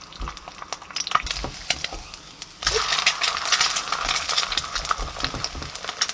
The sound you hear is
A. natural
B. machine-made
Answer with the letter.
A